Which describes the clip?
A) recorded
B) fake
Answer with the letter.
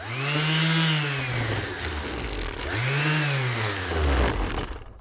A